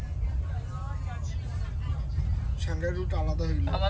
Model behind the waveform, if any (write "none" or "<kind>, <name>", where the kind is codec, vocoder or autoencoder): none